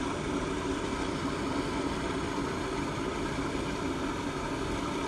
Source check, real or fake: real